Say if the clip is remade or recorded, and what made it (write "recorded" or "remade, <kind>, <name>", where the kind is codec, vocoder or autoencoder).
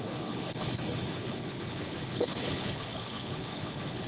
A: remade, codec, HILCodec